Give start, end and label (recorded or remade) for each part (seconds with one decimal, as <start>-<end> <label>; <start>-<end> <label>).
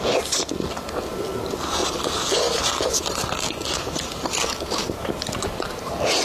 0.0-6.2 recorded